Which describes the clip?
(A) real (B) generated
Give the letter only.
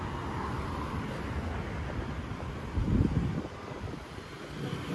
B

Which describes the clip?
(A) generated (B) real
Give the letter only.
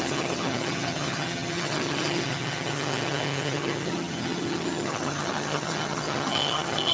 A